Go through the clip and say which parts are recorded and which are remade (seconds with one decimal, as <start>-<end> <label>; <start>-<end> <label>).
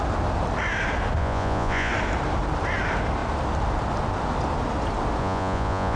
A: 0.0-1.2 recorded; 1.2-1.9 remade; 1.9-5.2 recorded; 5.2-6.0 remade